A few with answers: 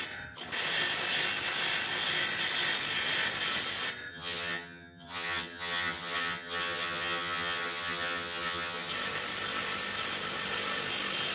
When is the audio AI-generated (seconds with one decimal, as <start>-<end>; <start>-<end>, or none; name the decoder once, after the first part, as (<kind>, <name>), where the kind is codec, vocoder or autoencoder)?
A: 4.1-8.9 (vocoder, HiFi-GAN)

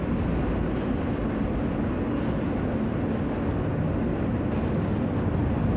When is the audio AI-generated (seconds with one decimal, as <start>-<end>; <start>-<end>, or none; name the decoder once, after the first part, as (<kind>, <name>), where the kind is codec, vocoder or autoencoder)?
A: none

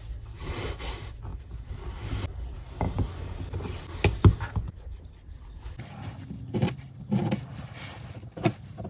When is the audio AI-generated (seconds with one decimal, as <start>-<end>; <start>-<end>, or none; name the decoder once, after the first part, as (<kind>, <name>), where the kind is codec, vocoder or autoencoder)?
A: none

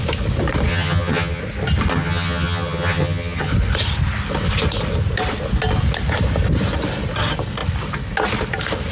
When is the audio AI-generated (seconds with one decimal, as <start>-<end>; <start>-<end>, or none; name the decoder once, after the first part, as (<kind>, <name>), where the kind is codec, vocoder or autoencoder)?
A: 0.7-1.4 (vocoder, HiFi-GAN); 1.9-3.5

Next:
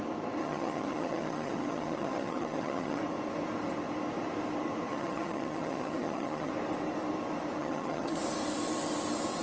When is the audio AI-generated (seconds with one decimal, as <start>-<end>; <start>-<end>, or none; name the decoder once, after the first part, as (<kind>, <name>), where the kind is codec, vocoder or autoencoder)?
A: 0.4-3.0 (vocoder, HiFi-GAN); 4.9-6.5; 7.6-8.2